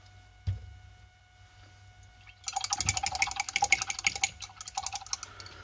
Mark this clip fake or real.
real